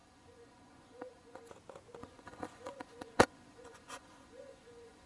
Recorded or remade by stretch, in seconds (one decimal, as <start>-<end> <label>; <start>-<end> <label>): 0.0-1.5 remade; 1.5-2.0 recorded; 2.0-5.1 remade